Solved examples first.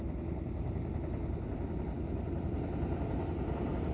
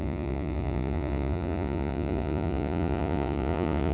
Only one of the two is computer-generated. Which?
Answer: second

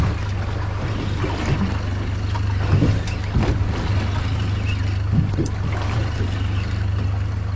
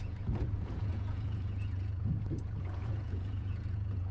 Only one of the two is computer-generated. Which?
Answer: second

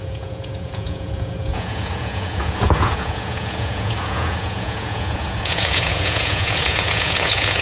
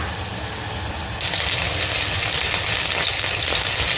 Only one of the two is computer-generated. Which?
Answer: first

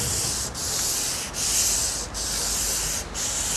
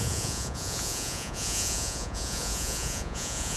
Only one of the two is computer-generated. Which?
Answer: second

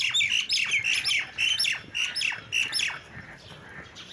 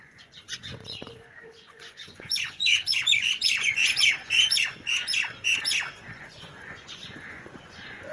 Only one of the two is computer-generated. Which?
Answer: second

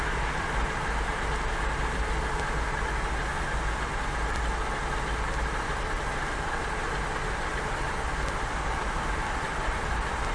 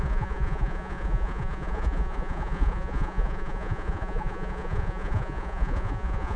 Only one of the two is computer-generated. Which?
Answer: second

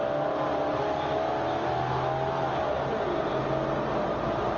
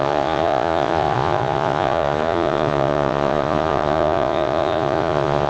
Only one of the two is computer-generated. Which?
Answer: second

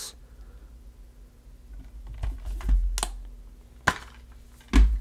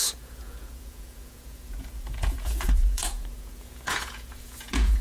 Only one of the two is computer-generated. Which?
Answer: second